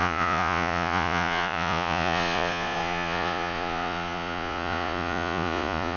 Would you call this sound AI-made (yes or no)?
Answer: yes